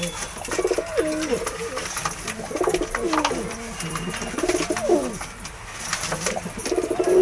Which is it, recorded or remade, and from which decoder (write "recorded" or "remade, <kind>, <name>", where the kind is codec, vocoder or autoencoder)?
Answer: recorded